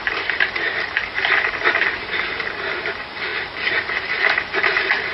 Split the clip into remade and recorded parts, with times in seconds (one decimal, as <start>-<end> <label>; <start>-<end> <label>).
0.0-5.1 remade